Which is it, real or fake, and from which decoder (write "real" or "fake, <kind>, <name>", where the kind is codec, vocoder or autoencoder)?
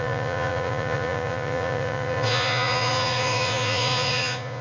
fake, vocoder, Vocos